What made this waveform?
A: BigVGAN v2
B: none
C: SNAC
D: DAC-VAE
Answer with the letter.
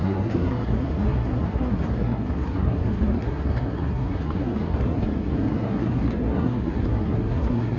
C